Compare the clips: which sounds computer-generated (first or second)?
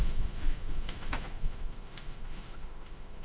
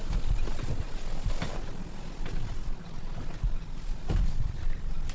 first